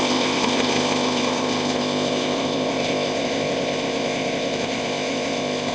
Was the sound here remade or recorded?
remade